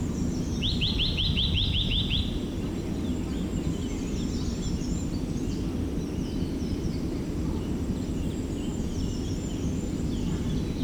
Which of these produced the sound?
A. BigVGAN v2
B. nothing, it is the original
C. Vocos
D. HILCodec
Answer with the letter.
B